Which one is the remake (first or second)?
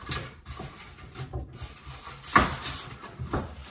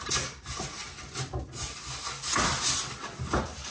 first